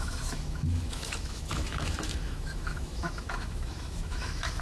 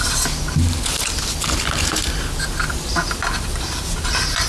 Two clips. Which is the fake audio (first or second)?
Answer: first